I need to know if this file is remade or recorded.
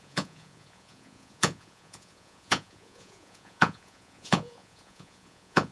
remade